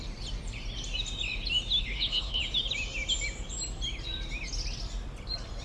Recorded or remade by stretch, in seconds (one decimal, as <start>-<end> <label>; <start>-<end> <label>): 0.0-1.8 recorded; 1.8-2.4 remade; 2.4-5.6 recorded